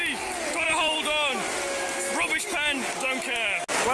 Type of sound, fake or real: real